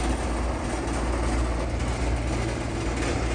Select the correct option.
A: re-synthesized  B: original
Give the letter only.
B